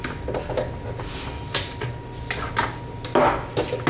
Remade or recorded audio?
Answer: recorded